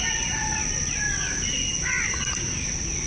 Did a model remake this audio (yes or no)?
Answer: no